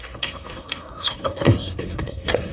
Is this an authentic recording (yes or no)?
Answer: no